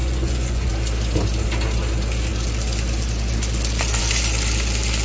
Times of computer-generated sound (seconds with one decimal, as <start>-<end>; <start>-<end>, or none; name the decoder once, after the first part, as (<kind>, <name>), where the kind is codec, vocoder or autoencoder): 0.0-0.7 (vocoder, Vocos)